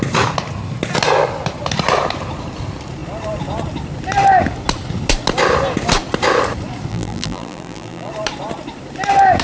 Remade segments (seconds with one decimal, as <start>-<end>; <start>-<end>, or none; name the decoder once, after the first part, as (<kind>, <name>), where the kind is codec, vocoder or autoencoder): 6.9-8.1 (vocoder, BigVGAN v2)